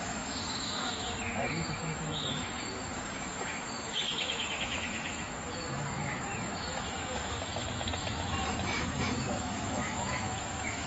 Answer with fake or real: fake